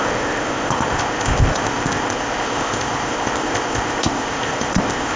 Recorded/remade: remade